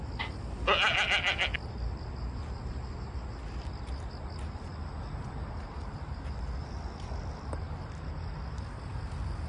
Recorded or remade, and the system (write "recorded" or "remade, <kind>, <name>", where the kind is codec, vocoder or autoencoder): recorded